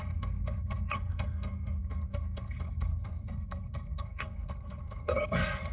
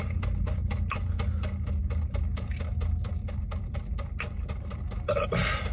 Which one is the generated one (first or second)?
first